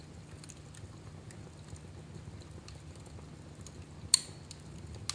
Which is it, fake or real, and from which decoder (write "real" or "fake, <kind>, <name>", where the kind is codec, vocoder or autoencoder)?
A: real